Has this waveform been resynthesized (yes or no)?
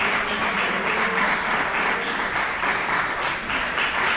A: no